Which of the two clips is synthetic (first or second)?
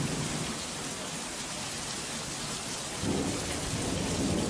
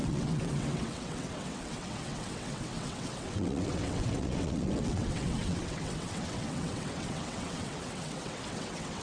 second